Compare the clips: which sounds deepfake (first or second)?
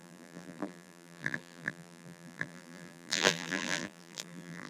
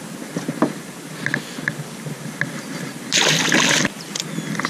first